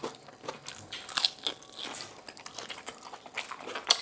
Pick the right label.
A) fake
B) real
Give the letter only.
B